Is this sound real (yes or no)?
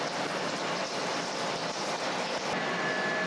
yes